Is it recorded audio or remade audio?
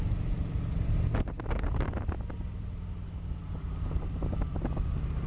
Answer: recorded